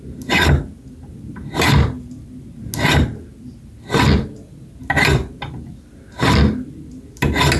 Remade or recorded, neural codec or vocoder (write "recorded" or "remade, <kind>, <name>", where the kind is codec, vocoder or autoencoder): recorded